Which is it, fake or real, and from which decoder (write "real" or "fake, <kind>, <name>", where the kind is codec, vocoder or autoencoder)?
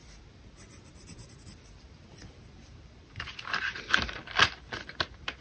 fake, vocoder, BigVGAN v2